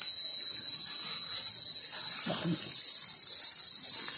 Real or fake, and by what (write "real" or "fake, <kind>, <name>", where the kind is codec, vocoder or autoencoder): real